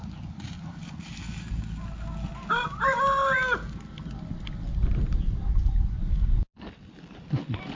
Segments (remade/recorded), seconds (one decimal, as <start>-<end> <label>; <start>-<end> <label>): 0.0-7.7 recorded

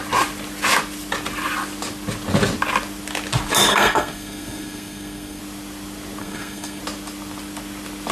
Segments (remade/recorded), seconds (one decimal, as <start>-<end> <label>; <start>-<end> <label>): 0.0-3.7 recorded; 3.7-5.4 remade; 5.4-6.2 recorded; 6.2-6.8 remade; 6.8-8.1 recorded

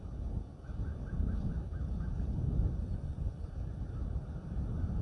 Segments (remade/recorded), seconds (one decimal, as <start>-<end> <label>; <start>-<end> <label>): 0.0-2.8 recorded; 2.8-3.5 remade; 3.5-5.0 recorded